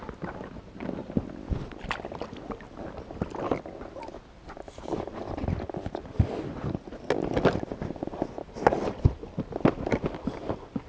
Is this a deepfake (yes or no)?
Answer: no